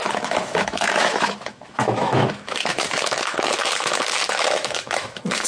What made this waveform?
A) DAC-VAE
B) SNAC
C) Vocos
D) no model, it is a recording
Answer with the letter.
A